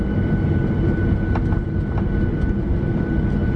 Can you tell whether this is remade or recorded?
recorded